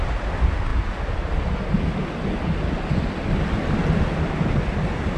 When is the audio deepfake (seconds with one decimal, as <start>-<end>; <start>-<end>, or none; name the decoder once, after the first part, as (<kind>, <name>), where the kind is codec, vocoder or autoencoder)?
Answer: none